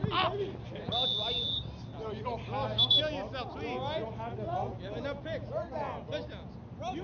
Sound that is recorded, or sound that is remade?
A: recorded